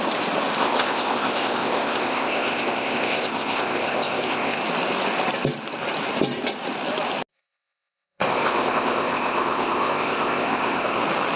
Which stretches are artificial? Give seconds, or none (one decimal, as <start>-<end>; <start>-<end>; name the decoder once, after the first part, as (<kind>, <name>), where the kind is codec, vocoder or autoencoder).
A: 0.6-4.6 (codec, ZipCodec); 7.3-11.0